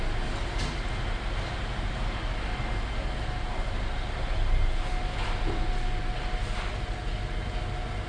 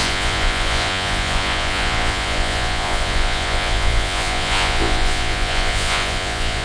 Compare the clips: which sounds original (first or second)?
first